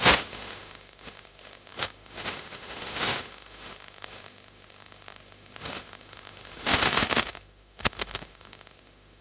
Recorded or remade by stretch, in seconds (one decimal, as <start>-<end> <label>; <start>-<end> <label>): 0.0-9.2 remade